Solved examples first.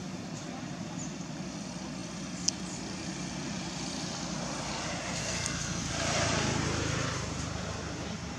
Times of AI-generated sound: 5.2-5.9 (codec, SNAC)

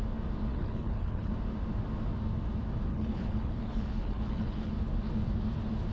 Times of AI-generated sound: 0.5-1.3 (codec, HILCodec); 2.9-4.7

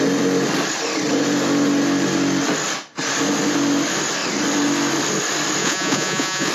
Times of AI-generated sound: 5.6-6.5 (vocoder, Vocos)

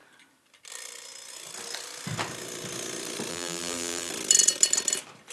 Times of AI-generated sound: 3.3-4.1 (vocoder, BigVGAN v2)

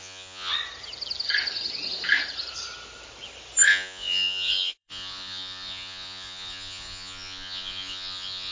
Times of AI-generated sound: 0.0-0.5 (vocoder, Vocos); 3.7-8.5

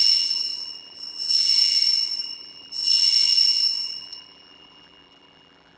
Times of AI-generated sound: 0.0-5.8 (vocoder, BigVGAN v2)

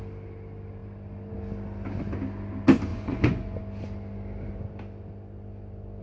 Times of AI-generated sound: 2.9-3.6 (vocoder, Vocos)